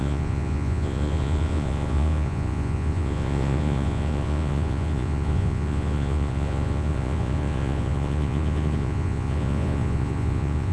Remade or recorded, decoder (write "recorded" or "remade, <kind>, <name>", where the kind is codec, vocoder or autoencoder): remade, vocoder, Vocos